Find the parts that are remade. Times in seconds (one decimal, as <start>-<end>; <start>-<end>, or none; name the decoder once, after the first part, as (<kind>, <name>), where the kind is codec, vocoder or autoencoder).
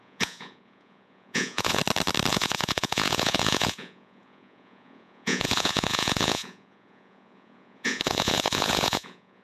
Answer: 0.0-1.8 (vocoder, Vocos); 2.3-9.4